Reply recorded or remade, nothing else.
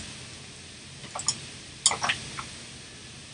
recorded